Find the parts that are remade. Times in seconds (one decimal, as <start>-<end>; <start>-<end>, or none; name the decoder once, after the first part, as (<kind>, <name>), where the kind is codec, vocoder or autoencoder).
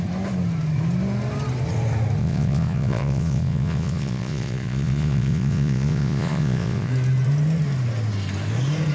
2.2-6.9 (vocoder, Vocos)